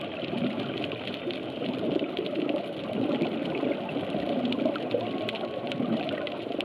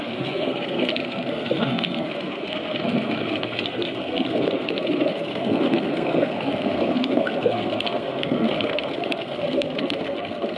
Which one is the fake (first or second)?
second